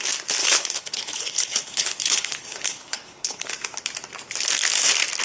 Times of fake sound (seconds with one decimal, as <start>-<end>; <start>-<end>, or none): 0.4-3.5

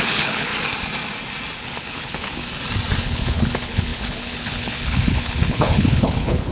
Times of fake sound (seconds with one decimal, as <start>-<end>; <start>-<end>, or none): 0.0-0.5; 1.6-2.4; 3.0-6.5

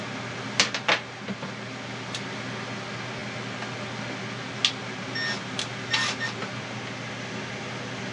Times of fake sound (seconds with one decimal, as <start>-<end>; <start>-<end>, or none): none